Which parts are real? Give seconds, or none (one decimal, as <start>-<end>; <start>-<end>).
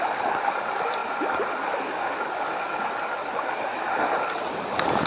0.0-5.1